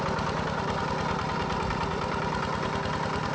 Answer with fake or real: real